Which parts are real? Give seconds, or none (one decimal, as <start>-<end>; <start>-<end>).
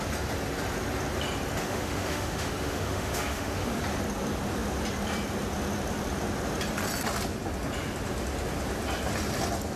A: 0.0-1.6; 3.8-9.8